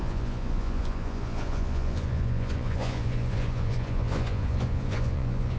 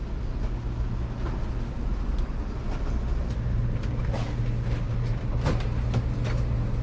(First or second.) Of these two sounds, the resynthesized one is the first